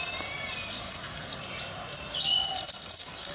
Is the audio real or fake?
real